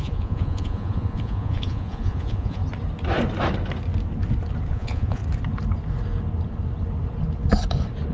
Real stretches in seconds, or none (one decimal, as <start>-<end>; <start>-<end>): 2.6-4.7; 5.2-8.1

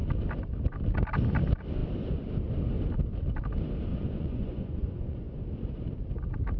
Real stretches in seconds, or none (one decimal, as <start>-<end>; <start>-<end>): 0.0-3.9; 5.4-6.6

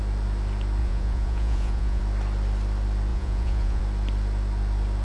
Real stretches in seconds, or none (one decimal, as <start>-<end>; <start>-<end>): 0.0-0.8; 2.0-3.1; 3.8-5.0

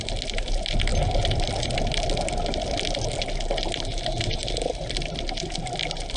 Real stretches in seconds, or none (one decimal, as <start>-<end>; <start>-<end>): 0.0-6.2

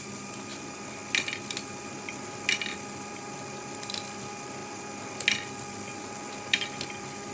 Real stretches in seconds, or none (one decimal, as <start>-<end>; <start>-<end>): 0.0-7.3